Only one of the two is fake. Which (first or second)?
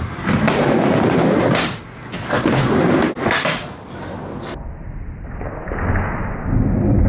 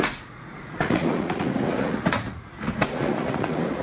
second